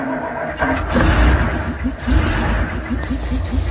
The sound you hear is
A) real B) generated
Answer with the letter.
A